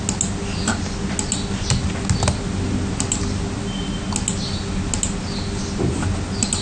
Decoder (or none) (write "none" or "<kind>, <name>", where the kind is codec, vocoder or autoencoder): none